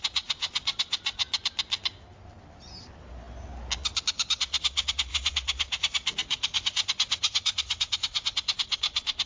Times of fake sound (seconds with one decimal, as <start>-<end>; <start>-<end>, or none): 0.0-1.2; 4.4-9.3